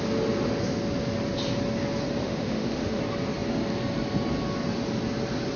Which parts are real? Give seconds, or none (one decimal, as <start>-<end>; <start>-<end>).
0.0-2.2; 3.0-5.6